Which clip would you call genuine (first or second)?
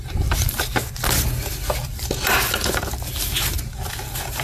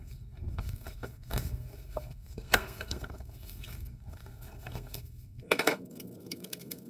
first